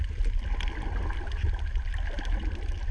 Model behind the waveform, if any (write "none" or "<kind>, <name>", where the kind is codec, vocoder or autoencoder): none